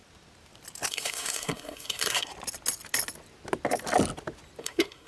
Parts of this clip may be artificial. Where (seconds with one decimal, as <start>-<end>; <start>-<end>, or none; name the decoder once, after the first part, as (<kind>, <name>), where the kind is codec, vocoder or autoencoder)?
0.9-2.3 (codec, SNAC); 4.6-5.1